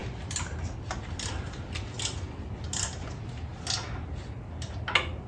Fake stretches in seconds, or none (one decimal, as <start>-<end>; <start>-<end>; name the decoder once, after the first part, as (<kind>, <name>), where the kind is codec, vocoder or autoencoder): none